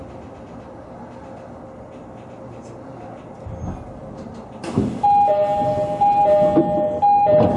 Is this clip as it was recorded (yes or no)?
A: yes